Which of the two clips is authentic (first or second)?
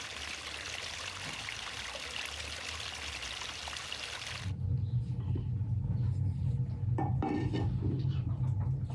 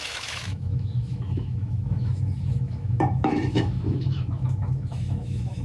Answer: first